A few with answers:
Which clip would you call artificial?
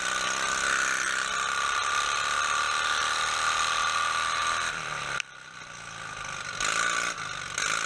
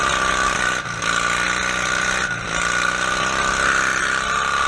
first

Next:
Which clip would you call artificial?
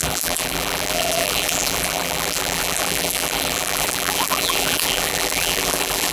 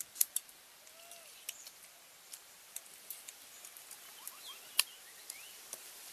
first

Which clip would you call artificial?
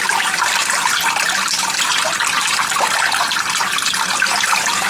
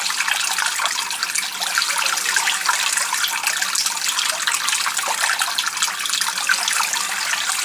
first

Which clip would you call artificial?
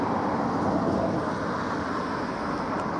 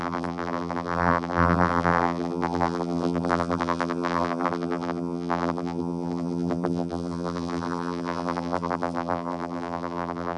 second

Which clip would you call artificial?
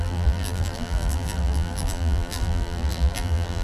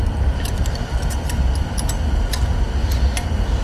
first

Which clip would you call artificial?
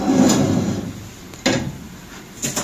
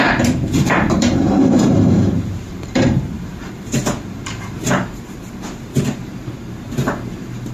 second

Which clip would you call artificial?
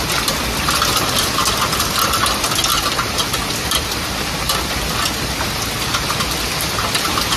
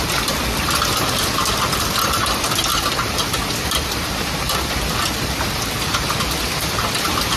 second